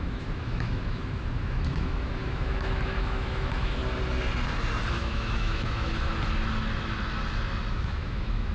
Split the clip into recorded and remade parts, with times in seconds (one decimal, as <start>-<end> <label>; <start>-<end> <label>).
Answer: 0.0-3.8 remade; 3.8-4.9 recorded; 4.9-6.1 remade; 6.1-7.7 recorded; 7.7-8.5 remade